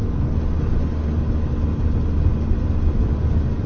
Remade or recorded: recorded